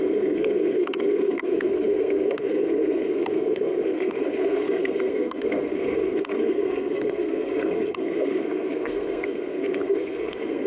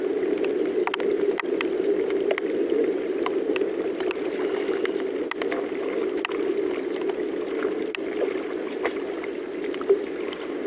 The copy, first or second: first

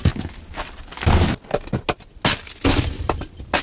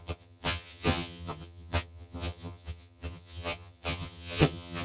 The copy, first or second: second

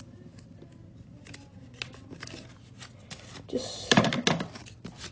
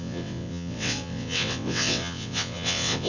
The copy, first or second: second